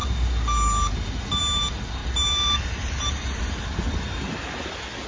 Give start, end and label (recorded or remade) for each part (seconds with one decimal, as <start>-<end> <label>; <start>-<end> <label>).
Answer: 0.0-2.0 recorded; 2.0-3.4 remade; 3.4-5.1 recorded